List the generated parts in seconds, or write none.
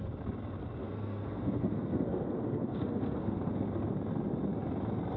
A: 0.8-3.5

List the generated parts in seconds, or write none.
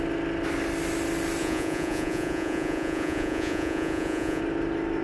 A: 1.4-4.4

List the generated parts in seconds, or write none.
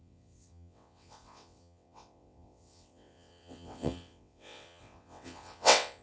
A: 0.0-6.0